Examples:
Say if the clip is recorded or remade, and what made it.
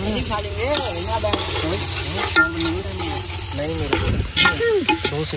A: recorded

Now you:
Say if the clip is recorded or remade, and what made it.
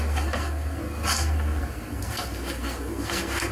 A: remade, codec, SNAC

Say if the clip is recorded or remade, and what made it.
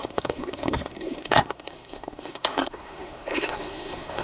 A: remade, codec, SNAC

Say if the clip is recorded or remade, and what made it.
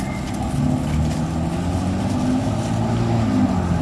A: recorded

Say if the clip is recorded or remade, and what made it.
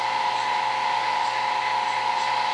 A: recorded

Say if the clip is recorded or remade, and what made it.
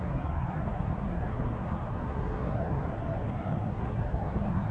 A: remade, codec, SNAC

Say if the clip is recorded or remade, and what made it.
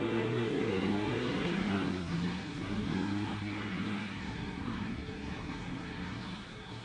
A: remade, codec, SNAC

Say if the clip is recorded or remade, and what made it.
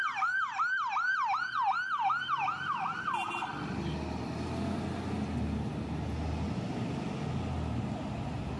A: recorded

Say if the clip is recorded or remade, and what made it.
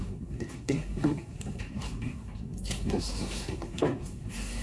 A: remade, codec, SNAC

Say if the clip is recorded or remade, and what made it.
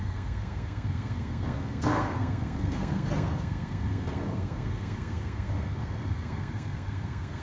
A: remade, codec, SNAC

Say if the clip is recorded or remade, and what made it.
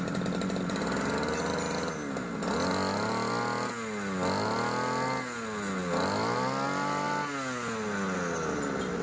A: recorded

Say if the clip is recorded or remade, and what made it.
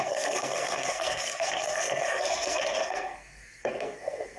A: remade, codec, SNAC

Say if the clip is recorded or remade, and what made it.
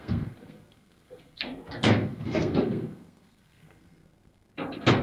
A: remade, codec, SNAC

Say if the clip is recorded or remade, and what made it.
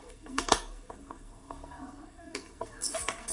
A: remade, codec, SNAC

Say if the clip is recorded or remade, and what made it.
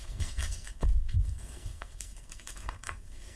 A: remade, codec, SNAC